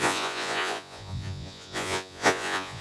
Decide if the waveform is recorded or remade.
remade